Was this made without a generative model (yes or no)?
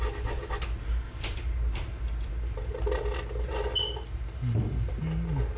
yes